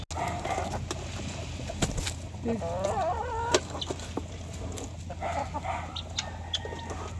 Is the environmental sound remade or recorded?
recorded